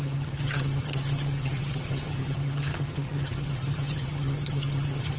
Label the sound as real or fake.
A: fake